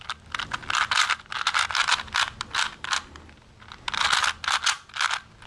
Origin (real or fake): real